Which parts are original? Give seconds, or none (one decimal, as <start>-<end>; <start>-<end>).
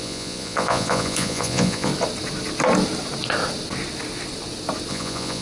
1.9-4.9